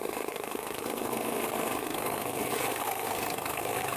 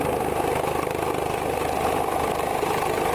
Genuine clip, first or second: second